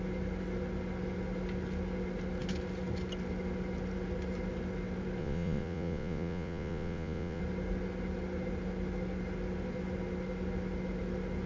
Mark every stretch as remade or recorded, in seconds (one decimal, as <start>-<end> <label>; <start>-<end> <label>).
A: 0.0-5.2 recorded; 5.2-7.4 remade; 7.4-11.5 recorded